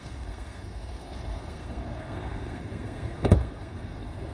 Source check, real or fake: fake